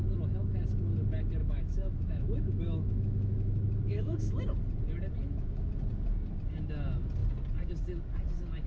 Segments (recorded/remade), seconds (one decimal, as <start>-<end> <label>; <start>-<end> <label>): 0.0-1.4 recorded; 1.4-4.4 remade; 4.4-5.2 recorded; 5.2-5.7 remade; 5.7-8.7 recorded